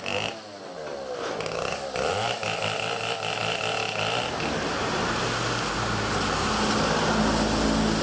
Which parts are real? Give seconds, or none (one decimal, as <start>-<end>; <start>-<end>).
0.0-8.0